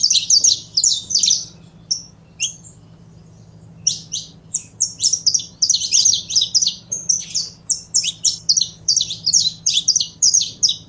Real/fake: fake